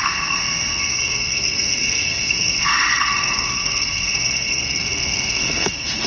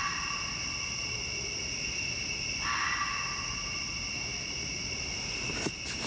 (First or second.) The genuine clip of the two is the second